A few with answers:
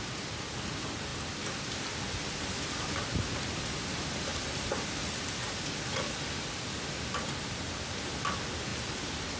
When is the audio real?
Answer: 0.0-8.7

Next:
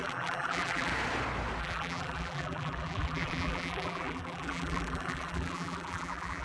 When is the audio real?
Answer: 0.9-1.6

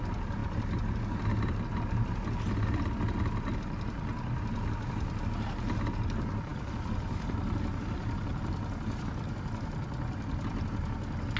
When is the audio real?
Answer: 0.0-6.5; 7.8-11.4

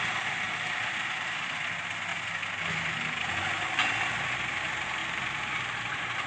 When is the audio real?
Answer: 0.0-5.0

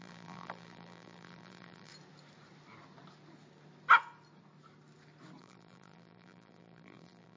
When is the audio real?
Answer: 1.9-5.4

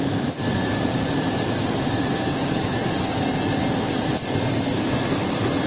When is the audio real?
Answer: 0.0-0.7; 4.1-5.7